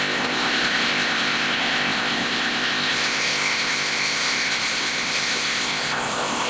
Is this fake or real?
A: fake